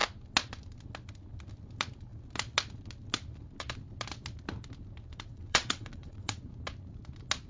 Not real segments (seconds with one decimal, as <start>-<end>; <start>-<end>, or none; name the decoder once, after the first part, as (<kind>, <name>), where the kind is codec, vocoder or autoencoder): 5.1-6.4 (vocoder, WaveNeXt)